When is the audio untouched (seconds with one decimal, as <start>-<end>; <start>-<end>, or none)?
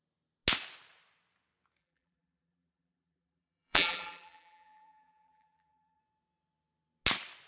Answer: 0.0-1.8; 6.0-7.5